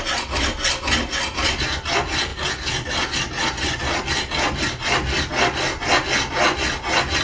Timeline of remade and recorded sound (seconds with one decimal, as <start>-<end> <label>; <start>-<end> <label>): 0.0-7.2 recorded